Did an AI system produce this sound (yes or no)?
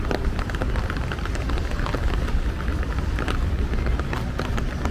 yes